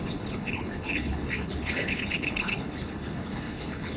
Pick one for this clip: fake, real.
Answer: fake